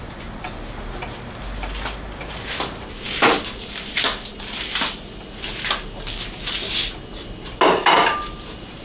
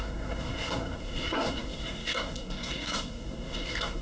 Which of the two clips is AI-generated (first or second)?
second